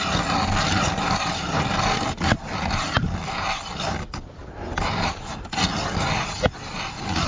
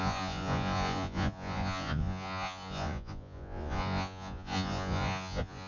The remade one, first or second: second